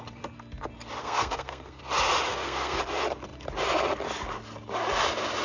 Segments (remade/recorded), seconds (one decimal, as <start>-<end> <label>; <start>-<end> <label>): 0.0-1.0 recorded; 1.0-1.8 remade; 1.8-2.3 recorded; 2.3-2.8 remade; 2.8-5.4 recorded